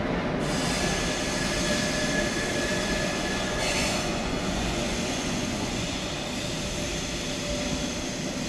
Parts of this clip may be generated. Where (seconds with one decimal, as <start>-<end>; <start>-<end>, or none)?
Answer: 2.7-6.1